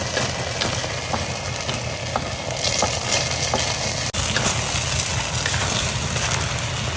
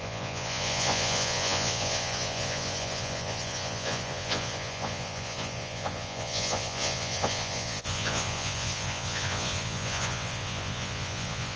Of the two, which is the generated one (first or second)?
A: second